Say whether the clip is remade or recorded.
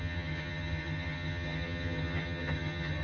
remade